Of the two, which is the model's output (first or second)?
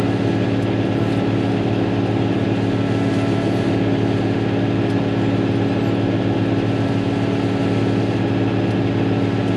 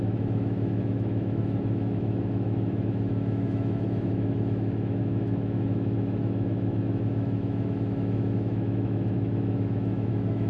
second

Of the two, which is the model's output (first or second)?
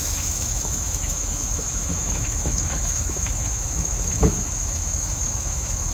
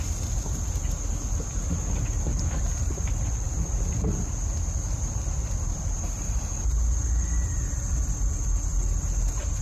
first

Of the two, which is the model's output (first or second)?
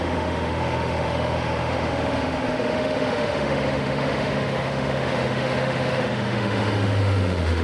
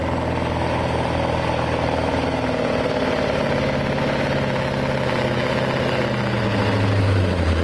first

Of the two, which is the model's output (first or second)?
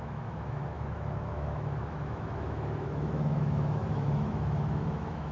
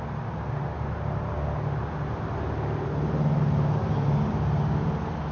first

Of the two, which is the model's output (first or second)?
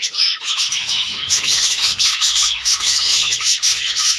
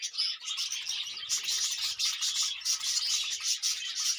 first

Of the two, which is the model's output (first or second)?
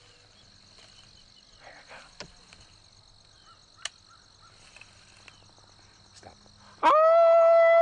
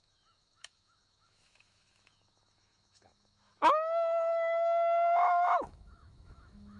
second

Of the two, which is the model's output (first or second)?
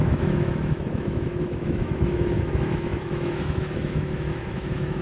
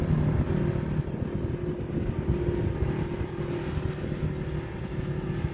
first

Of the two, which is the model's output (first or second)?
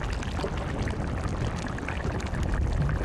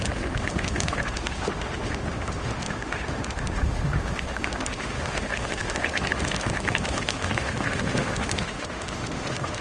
second